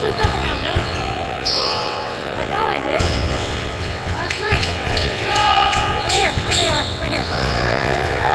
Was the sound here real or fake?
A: fake